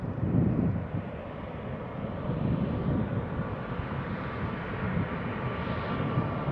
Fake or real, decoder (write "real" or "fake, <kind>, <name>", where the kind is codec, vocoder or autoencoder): fake, vocoder, BigVGAN v2